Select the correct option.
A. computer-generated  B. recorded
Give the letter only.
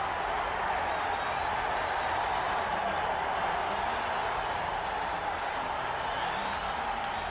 B